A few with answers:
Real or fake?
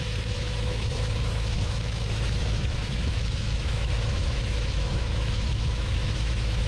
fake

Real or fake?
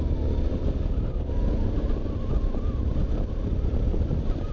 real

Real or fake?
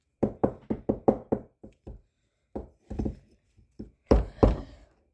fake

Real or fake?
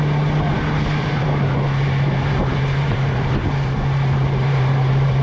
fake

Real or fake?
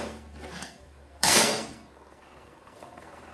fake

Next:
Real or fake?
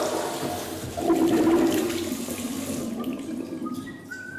real